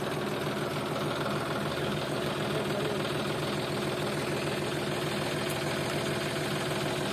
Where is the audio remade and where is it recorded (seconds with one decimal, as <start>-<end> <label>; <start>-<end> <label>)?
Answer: 0.0-1.7 recorded; 1.7-2.3 remade; 2.3-7.1 recorded